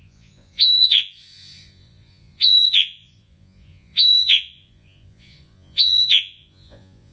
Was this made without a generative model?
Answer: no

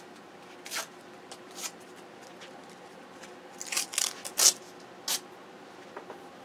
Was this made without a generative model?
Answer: yes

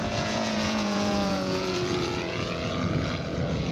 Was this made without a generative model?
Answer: no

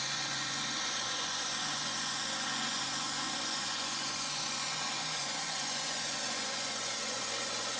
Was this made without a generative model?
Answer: no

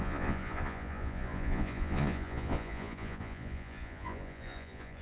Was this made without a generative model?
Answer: no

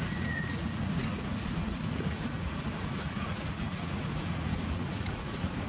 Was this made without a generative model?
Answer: no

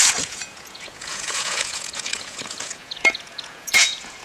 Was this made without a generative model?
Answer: no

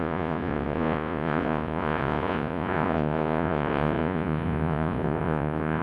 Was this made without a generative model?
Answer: no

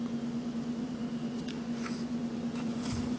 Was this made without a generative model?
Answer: no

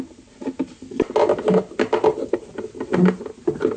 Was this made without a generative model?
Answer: yes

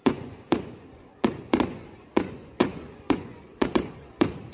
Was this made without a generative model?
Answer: no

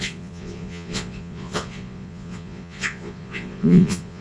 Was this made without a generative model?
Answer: no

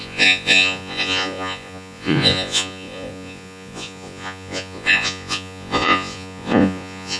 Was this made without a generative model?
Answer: no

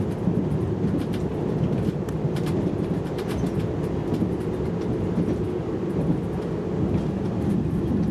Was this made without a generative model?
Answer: yes